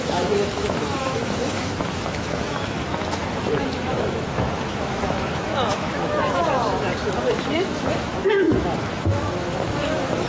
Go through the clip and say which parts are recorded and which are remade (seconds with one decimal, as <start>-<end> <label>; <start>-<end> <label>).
0.0-10.3 remade